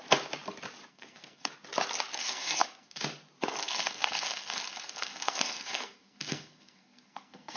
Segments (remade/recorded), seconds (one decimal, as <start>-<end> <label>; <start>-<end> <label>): 0.0-0.9 recorded; 0.9-1.5 remade; 1.5-2.1 recorded; 2.1-3.0 remade; 3.0-3.6 recorded; 3.6-7.6 remade

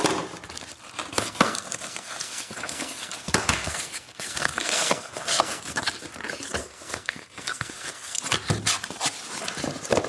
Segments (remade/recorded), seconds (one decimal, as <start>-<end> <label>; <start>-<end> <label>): 0.0-1.1 recorded; 1.1-5.8 remade; 5.8-6.6 recorded; 6.6-8.2 remade; 8.2-10.1 recorded

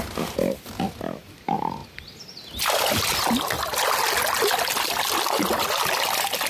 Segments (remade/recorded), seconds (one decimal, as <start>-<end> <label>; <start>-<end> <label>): 0.0-6.5 recorded

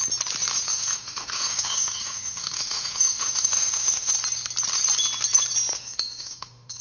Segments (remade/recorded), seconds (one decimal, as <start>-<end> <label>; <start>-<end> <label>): 0.0-0.7 recorded; 0.7-4.1 remade; 4.1-5.7 recorded; 5.7-6.8 remade

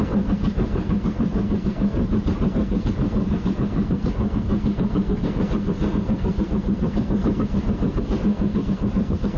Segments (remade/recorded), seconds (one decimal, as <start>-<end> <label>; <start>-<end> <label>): 0.0-2.0 remade; 2.0-2.5 recorded; 2.5-9.4 remade

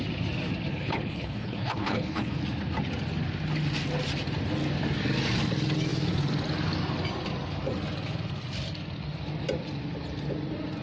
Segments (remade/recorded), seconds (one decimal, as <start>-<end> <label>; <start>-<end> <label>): 0.0-0.7 recorded; 0.7-2.4 remade; 2.4-10.8 recorded

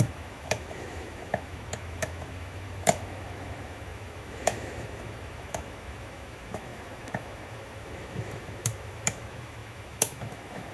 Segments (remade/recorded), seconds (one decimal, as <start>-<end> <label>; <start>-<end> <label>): 0.0-10.7 remade